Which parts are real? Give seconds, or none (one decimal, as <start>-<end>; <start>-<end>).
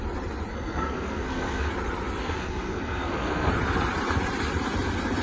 0.0-0.5; 1.7-2.2; 3.5-5.2